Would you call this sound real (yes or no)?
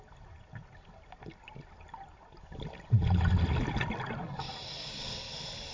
yes